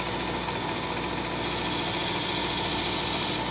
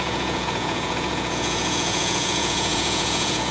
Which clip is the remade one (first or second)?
second